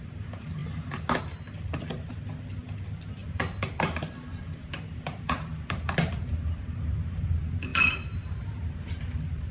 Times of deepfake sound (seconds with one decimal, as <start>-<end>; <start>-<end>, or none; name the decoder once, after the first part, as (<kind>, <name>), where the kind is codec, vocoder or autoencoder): 0.0-0.6 (vocoder, BigVGAN v2); 1.2-9.5